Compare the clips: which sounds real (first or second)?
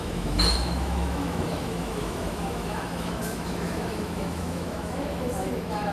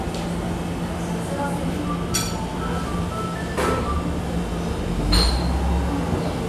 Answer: second